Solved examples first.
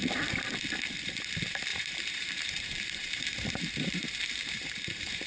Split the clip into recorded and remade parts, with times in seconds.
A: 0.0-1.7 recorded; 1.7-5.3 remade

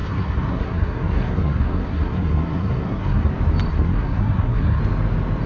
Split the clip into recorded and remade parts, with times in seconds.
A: 0.0-3.3 remade; 3.3-3.7 recorded; 3.7-4.8 remade; 4.8-5.5 recorded

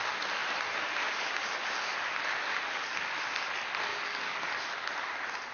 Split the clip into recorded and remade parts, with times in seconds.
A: 0.0-3.9 recorded; 3.9-4.6 remade; 4.6-5.5 recorded

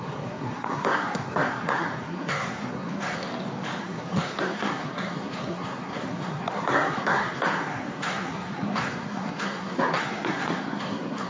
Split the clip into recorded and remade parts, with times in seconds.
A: 0.0-3.3 remade; 3.3-3.8 recorded; 3.8-11.3 remade

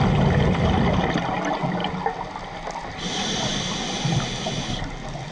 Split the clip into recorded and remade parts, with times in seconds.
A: 0.0-5.3 recorded

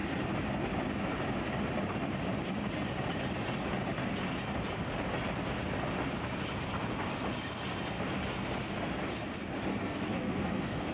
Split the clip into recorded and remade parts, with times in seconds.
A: 0.0-9.7 recorded; 9.7-10.9 remade

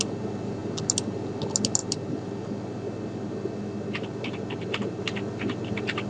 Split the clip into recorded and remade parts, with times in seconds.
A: 0.0-6.1 recorded